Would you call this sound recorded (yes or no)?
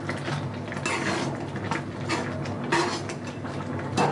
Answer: yes